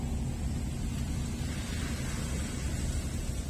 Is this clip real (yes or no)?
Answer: yes